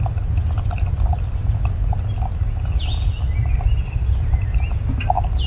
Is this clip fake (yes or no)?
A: no